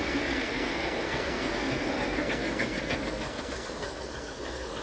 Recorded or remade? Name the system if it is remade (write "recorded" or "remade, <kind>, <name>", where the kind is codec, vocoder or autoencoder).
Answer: remade, codec, SNAC